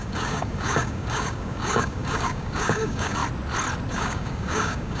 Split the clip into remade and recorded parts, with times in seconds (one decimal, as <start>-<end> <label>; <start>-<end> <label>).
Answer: 0.0-3.2 remade; 3.2-3.9 recorded; 3.9-5.0 remade